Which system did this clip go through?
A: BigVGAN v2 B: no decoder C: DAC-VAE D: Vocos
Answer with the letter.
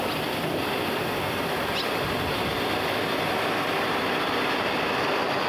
B